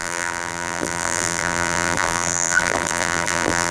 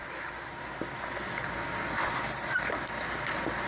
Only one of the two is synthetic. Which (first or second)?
first